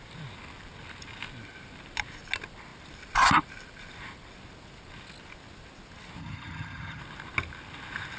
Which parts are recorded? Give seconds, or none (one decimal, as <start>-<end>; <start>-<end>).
0.0-6.2; 7.0-8.2